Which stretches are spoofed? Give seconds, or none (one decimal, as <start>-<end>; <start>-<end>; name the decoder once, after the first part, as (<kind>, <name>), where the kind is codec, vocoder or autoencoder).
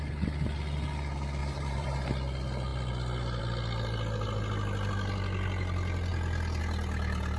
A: 1.4-2.1 (vocoder, BigVGAN v2)